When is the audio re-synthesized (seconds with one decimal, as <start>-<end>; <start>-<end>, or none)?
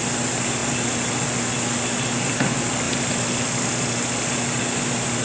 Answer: none